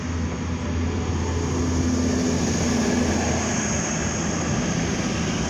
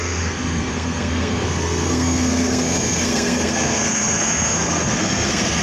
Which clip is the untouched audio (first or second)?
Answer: first